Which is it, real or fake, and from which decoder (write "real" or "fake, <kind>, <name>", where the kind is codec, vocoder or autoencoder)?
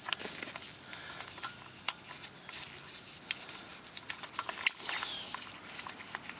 real